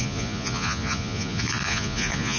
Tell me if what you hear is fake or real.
fake